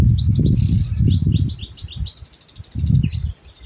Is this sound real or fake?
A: fake